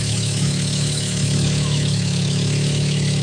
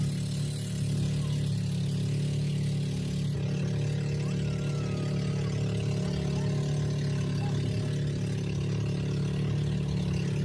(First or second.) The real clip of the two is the second